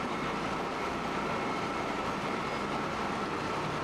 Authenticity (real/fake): real